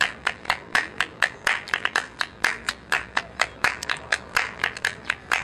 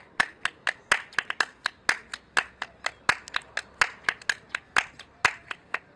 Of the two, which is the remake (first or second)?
first